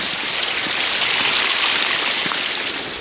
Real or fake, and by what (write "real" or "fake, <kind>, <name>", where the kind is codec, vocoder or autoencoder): real